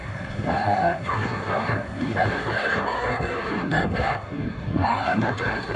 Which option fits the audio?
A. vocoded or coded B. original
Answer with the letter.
A